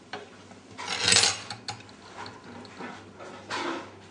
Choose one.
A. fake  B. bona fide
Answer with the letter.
B